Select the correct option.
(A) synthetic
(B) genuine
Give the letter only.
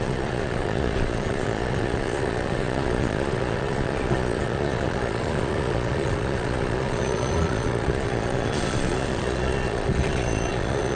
A